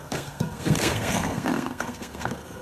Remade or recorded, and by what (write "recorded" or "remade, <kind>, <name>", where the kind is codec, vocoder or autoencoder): remade, codec, SNAC